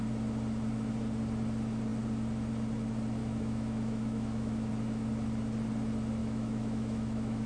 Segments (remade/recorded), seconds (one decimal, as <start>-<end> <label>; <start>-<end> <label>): 0.0-3.2 recorded; 3.2-4.7 remade; 4.7-6.2 recorded; 6.2-7.5 remade